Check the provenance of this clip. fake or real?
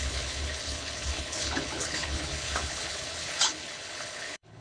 fake